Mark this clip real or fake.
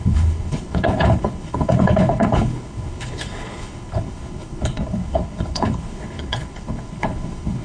fake